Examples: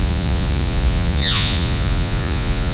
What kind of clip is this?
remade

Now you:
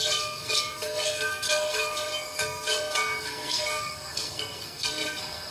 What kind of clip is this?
remade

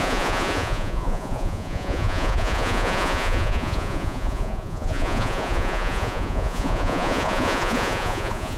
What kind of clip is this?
remade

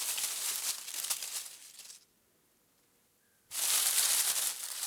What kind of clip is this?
recorded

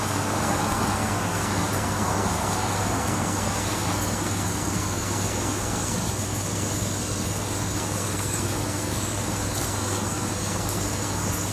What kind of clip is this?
remade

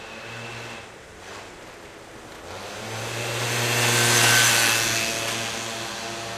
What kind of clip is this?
recorded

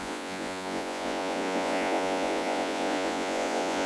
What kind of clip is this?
remade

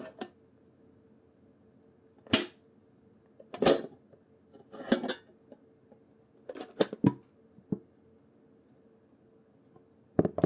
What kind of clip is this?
recorded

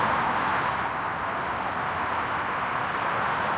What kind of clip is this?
recorded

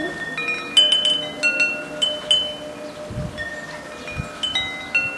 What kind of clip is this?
recorded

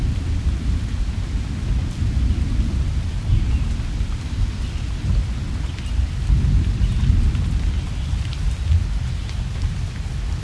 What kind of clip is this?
recorded